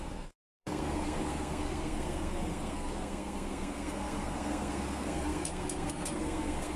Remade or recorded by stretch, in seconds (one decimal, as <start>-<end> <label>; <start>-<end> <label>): 0.0-6.8 remade